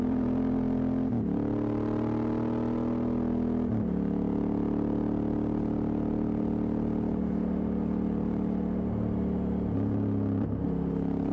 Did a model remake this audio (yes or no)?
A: no